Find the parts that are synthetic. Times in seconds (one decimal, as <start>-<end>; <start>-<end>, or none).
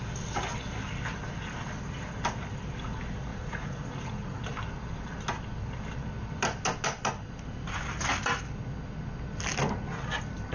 3.3-4.4